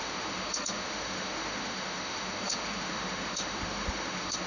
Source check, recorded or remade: remade